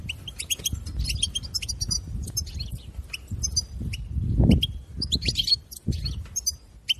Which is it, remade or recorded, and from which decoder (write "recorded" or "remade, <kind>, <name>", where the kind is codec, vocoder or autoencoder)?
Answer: recorded